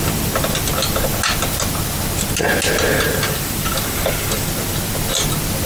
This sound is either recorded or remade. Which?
recorded